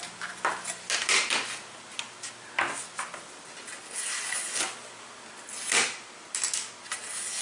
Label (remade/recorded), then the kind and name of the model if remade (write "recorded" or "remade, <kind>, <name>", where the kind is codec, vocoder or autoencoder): recorded